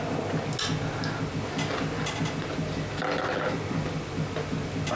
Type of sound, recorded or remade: recorded